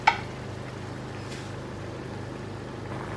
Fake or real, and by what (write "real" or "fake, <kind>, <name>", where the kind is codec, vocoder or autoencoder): real